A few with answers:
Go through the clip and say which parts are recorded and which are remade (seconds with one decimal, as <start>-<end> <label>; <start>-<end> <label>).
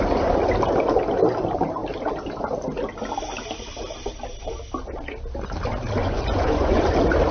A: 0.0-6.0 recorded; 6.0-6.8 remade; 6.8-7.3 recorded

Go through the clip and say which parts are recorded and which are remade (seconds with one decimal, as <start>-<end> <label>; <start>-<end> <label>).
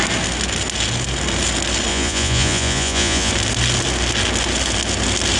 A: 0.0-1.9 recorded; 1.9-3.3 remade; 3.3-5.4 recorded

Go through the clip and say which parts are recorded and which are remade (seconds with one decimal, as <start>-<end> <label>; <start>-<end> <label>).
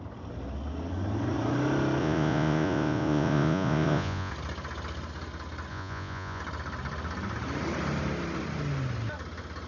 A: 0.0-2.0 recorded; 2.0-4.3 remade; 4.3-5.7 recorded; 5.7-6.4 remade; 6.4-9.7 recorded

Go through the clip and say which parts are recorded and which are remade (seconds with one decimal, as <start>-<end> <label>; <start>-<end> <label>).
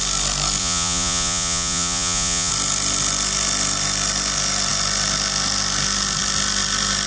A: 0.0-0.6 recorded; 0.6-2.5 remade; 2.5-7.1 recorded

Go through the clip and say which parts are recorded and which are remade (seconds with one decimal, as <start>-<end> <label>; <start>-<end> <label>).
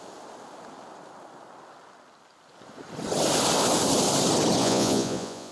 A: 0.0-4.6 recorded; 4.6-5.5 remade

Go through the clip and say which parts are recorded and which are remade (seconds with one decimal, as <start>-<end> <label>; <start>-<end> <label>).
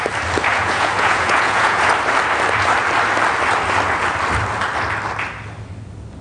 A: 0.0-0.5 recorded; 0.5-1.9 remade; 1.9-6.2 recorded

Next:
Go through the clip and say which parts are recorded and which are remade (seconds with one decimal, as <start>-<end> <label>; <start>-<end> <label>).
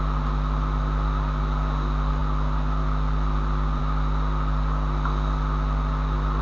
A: 0.0-6.4 recorded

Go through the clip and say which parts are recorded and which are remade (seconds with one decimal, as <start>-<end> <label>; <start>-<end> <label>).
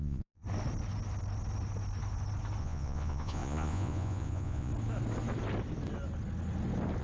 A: 0.0-0.4 remade; 0.4-2.6 recorded; 2.6-4.7 remade; 4.7-7.0 recorded